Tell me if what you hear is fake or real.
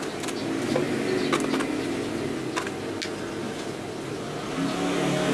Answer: real